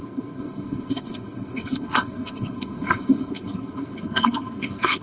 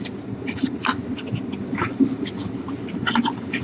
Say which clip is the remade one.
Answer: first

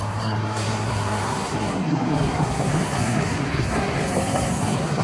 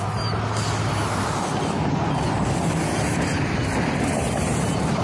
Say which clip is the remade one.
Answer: first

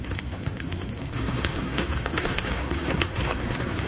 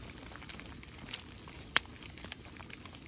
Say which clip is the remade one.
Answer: first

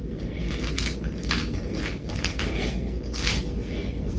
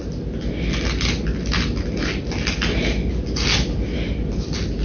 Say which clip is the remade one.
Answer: first